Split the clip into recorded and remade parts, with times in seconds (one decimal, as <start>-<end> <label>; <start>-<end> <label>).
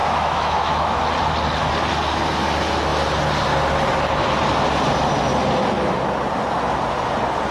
0.0-1.0 remade; 1.0-7.5 recorded